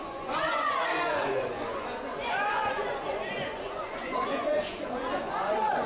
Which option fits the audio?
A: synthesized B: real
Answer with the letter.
A